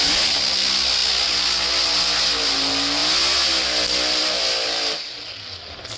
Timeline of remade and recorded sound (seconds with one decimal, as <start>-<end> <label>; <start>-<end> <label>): 0.0-6.0 recorded